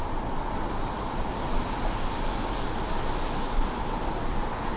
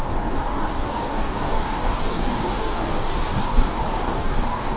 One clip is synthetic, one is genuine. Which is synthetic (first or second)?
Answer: second